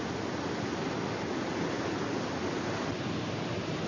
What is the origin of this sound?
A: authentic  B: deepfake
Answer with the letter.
A